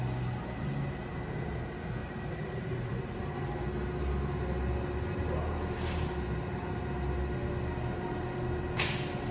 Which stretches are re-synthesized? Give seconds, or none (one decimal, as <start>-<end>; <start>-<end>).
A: 2.0-2.9